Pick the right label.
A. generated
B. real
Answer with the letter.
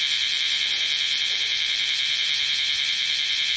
A